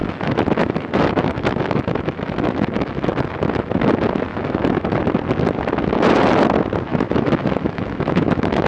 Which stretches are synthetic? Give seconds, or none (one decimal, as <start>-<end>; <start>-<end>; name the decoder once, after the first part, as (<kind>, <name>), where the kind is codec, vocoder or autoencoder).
0.0-3.9 (autoencoder, DAC-VAE); 4.3-5.0; 6.9-8.7